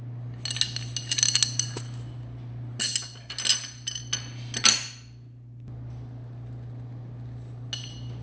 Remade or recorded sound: recorded